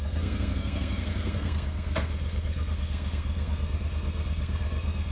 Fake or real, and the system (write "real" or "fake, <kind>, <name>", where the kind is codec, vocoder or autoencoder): fake, codec, SNAC